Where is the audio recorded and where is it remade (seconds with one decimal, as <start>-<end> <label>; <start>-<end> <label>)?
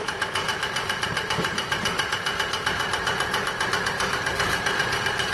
0.0-5.3 remade